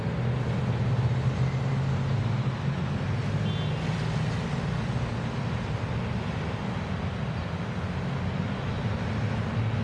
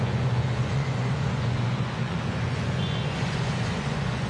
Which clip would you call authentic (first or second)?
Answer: first